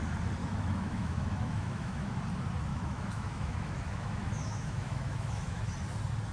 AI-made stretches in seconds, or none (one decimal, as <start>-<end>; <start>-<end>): 0.4-2.2; 2.7-5.6